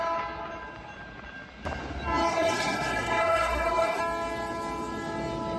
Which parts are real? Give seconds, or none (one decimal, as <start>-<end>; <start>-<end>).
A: 0.0-2.3; 4.0-5.6